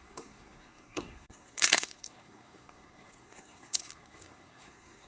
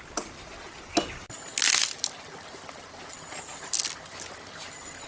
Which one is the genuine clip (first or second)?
second